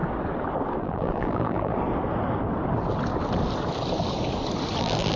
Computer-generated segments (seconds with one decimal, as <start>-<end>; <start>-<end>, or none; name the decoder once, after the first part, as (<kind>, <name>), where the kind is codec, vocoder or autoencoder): 0.8-1.7 (vocoder, BigVGAN v2); 4.8-5.2